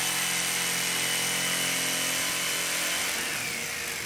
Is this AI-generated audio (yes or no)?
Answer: no